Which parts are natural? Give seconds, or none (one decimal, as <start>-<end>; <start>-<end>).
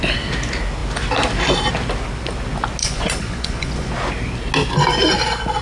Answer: 0.0-2.8; 3.9-5.6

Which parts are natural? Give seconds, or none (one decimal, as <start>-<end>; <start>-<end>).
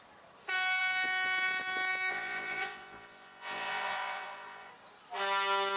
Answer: 0.0-2.1; 4.7-5.8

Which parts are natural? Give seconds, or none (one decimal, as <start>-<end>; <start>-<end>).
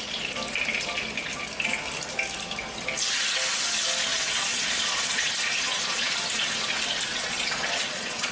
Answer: 0.0-4.1; 6.1-7.1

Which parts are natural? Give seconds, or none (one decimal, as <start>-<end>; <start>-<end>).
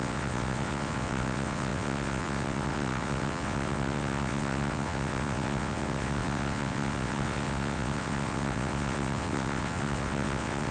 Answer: none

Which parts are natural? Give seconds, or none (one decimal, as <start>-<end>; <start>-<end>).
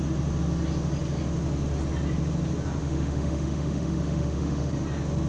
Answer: 0.0-2.8; 4.7-5.3